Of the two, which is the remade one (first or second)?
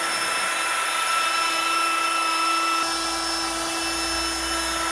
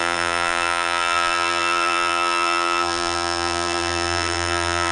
second